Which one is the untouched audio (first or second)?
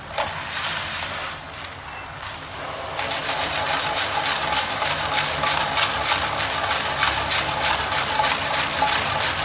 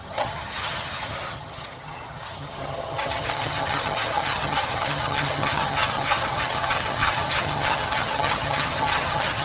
first